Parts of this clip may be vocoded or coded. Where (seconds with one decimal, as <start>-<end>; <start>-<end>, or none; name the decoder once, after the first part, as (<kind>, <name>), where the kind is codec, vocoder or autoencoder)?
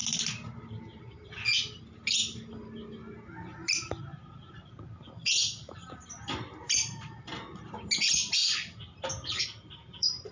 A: 0.0-0.8 (vocoder, BigVGAN v2); 3.6-7.8; 8.4-10.3